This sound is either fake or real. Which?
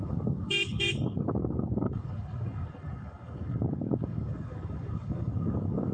fake